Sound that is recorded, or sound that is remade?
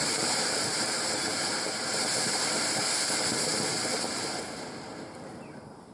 remade